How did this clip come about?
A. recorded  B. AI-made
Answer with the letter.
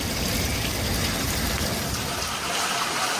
A